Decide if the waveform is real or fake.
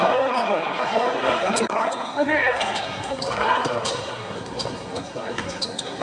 fake